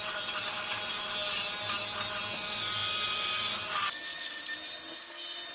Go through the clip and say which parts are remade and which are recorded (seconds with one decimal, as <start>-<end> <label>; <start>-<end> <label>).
0.0-5.5 recorded